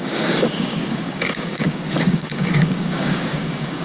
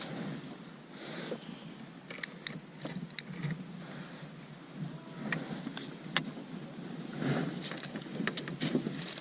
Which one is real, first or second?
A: second